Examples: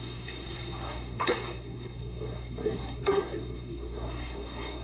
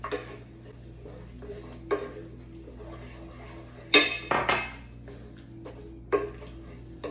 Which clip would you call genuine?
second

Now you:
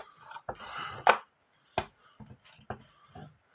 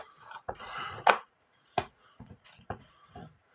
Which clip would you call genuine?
first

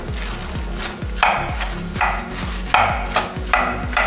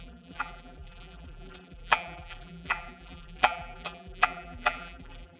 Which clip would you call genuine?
first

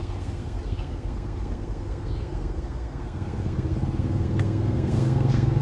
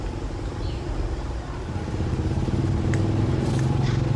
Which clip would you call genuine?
second